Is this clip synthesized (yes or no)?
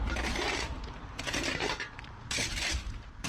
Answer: yes